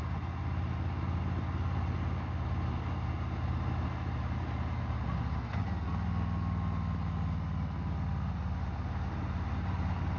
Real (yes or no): yes